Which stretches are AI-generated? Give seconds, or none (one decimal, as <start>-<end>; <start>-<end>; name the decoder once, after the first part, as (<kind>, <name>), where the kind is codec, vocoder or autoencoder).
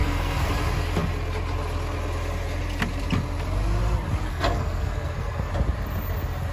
0.0-0.5 (codec, SNAC); 4.3-5.5